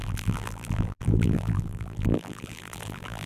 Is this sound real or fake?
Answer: fake